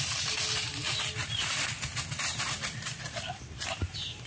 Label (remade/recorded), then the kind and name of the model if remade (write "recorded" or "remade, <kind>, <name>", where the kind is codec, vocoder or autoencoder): recorded